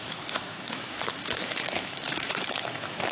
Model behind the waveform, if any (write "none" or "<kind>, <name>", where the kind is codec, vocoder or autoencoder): autoencoder, DAC-VAE